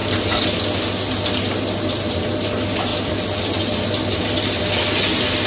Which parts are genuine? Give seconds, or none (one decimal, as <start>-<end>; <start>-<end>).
0.0-5.5